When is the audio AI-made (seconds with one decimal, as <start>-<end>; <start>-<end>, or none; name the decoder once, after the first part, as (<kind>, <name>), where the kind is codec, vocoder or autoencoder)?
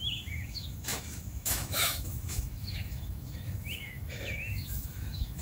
0.0-5.4 (autoencoder, DAC-VAE)